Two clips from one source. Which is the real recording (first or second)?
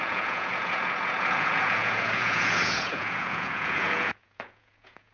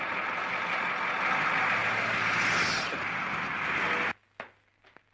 second